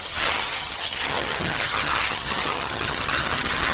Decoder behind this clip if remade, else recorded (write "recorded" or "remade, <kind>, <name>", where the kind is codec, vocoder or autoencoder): remade, vocoder, HiFi-GAN